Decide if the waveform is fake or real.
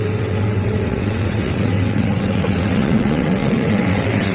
fake